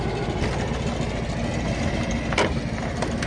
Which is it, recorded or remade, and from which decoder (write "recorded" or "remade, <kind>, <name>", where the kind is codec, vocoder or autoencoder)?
recorded